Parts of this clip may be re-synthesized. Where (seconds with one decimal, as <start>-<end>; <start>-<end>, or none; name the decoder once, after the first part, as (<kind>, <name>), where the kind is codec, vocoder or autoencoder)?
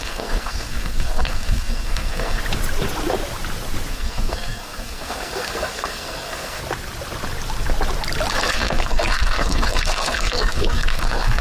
0.0-2.4 (codec, SNAC); 3.9-6.6; 8.3-11.4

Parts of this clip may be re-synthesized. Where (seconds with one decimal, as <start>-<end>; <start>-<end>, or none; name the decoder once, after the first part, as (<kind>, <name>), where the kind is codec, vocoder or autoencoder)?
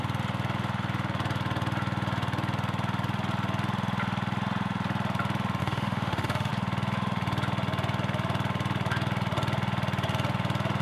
5.6-6.5 (autoencoder, DAC-VAE)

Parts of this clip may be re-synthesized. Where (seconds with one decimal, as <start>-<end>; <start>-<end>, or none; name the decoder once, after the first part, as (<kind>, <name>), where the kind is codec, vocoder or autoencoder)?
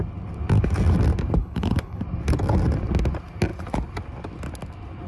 1.4-2.0 (codec, HILCodec)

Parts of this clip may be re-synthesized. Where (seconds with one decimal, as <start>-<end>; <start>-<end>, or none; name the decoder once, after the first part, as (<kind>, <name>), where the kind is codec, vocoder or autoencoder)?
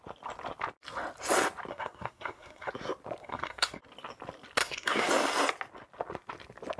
1.7-2.7 (codec, SNAC); 3.2-3.8; 4.6-5.1